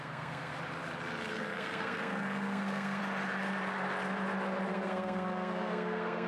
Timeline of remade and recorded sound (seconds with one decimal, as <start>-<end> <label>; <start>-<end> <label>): 0.0-0.5 remade; 0.5-1.3 recorded; 1.3-3.0 remade; 3.0-4.7 recorded; 4.7-6.3 remade